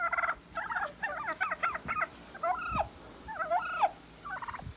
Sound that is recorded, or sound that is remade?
recorded